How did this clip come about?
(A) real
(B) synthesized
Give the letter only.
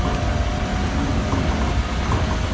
A